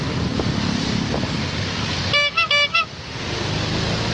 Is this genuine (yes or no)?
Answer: yes